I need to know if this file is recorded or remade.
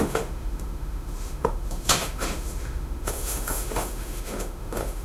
remade